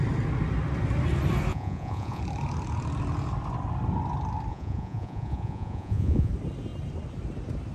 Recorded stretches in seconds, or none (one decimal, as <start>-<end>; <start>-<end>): 0.0-1.5; 2.2-4.5; 6.3-7.7